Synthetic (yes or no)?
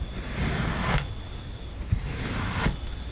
no